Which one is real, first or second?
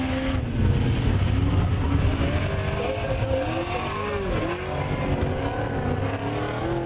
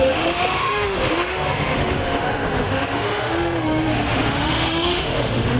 first